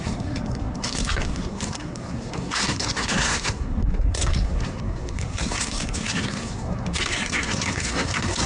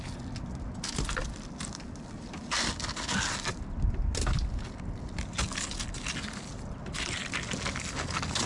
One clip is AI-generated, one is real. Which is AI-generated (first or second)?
first